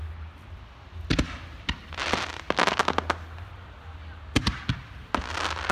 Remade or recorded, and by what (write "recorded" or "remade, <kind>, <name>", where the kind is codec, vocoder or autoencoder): recorded